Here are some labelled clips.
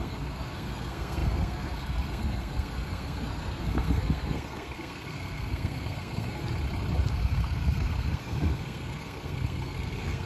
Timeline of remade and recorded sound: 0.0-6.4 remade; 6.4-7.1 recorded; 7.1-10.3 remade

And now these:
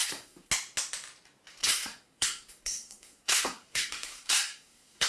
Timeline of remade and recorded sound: 0.0-0.5 remade; 0.5-1.6 recorded; 1.6-5.1 remade